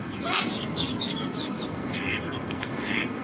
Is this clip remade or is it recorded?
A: remade